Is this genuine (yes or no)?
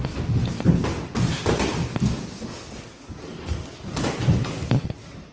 yes